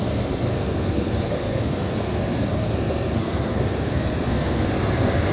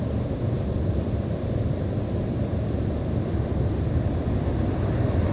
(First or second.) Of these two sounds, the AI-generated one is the first